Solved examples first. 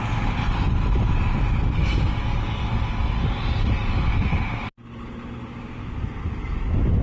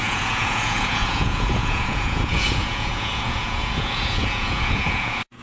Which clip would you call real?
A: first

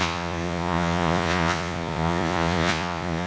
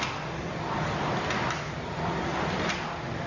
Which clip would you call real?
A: second